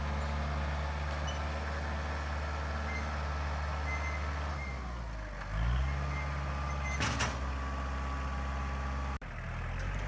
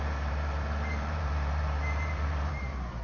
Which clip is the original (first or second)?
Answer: first